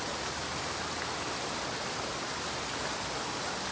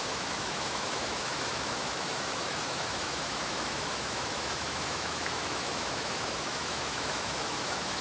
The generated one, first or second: second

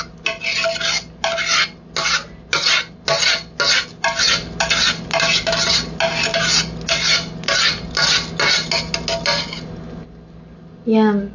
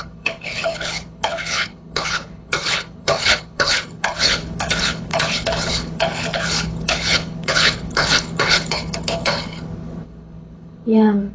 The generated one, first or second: second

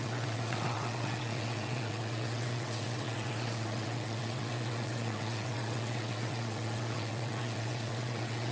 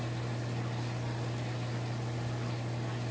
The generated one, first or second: first